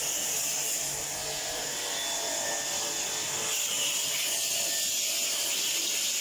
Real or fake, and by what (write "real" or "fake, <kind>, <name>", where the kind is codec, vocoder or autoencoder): real